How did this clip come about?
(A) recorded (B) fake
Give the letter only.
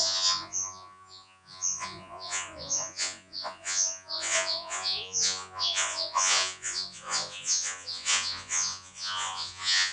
B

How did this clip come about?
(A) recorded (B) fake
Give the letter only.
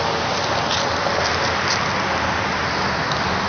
A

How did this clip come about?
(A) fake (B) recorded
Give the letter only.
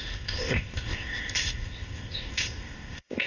A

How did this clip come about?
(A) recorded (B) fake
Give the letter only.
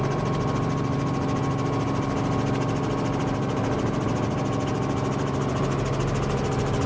A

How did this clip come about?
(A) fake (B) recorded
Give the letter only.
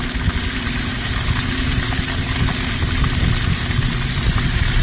B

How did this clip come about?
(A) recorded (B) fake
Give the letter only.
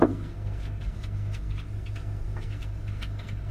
B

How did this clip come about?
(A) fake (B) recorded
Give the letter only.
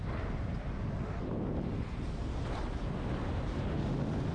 B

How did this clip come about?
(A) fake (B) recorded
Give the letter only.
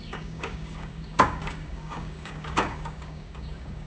A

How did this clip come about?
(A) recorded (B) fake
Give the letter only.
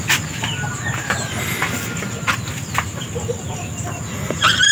A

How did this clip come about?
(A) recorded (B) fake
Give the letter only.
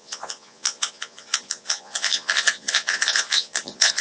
B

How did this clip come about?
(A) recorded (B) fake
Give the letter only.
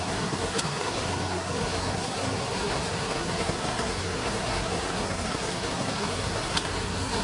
B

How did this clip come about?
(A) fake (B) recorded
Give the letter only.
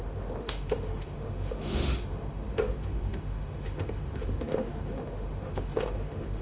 A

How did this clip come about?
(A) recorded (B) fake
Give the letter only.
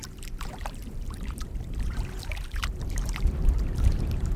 B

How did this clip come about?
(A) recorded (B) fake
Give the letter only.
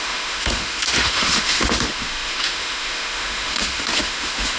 B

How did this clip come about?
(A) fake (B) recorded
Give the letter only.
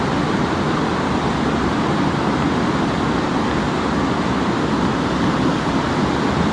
B